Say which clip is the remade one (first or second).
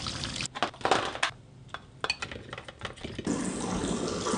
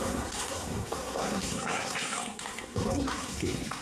second